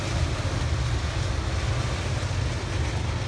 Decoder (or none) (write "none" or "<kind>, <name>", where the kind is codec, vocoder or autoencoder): none